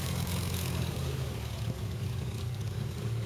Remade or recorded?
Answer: remade